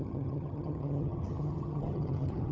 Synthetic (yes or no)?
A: yes